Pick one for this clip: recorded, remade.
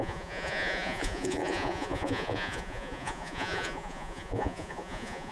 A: remade